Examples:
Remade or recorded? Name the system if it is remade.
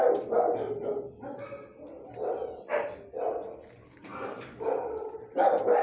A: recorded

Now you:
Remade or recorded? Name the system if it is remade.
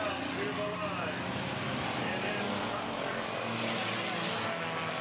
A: recorded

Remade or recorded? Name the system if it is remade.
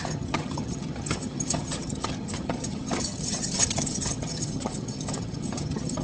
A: remade, vocoder, HiFi-GAN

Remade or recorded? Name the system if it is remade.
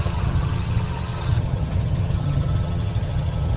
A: remade, vocoder, HiFi-GAN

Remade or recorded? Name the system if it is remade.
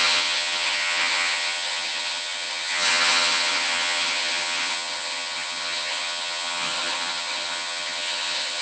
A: remade, vocoder, HiFi-GAN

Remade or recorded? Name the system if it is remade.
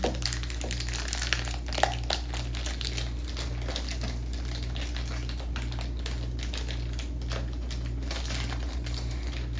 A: recorded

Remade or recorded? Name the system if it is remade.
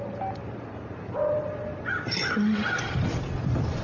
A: recorded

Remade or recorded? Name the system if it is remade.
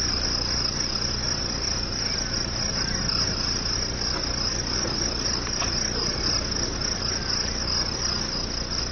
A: recorded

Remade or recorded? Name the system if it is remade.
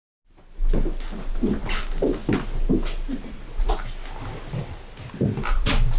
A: recorded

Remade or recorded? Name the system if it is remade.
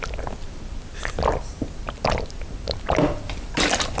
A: recorded